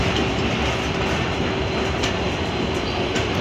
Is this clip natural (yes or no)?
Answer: yes